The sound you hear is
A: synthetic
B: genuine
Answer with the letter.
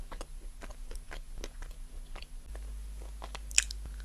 B